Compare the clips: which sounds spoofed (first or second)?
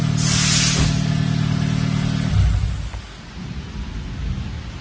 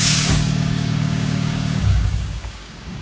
second